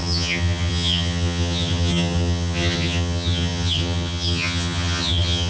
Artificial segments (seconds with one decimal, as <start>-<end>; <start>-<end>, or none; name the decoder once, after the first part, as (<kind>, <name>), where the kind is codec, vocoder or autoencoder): 0.0-5.5 (vocoder, HiFi-GAN)

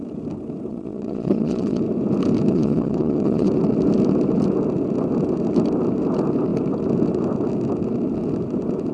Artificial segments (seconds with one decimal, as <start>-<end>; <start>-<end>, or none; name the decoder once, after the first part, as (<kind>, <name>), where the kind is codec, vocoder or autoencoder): 0.7-1.8 (vocoder, Vocos); 2.5-3.5

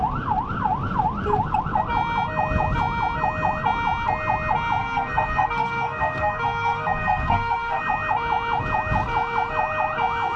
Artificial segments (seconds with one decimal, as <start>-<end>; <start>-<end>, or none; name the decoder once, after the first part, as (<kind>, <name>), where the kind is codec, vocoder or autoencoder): 4.8-7.8 (codec, SNAC)

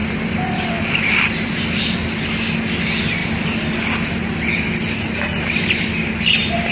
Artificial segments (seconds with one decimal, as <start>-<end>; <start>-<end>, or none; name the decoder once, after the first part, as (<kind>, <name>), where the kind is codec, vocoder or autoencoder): 0.0-2.6 (vocoder, BigVGAN v2); 3.2-5.5